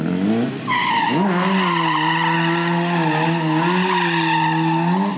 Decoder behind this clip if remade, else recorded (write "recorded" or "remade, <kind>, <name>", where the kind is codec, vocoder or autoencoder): recorded